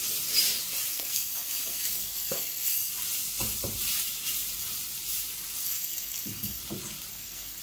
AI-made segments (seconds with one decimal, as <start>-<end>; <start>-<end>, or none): 0.9-2.9; 5.6-6.6; 7.1-7.6